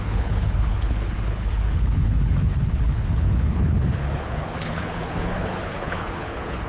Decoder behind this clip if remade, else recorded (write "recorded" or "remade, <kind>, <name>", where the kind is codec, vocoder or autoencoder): remade, codec, HILCodec